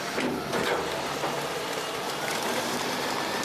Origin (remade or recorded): recorded